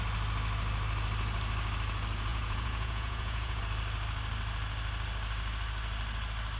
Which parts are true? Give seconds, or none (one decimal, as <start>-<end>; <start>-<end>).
0.0-2.3; 3.6-6.6

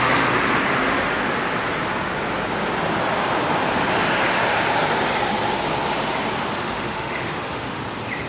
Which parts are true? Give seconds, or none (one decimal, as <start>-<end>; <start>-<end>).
0.0-6.5; 7.8-8.3

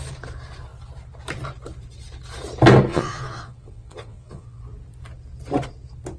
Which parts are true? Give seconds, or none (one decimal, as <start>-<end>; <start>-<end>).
0.0-2.9; 4.6-6.2

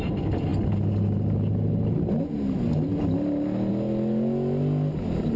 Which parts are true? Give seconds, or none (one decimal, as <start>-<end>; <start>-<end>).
0.0-5.4

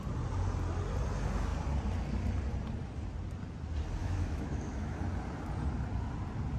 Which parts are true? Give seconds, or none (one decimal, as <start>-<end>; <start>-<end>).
0.0-4.0; 5.0-6.6

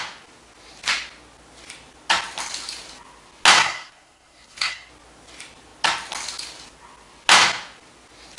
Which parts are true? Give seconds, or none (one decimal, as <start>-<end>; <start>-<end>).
0.0-3.6; 4.9-8.4

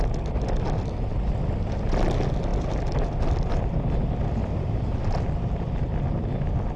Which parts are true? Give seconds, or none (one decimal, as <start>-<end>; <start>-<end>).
0.0-4.4; 5.2-6.8

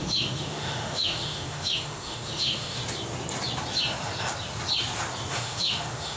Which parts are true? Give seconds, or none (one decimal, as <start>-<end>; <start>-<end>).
2.8-5.3